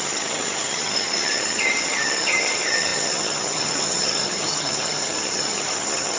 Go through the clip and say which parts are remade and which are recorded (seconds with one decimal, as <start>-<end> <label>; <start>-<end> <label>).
0.0-6.2 remade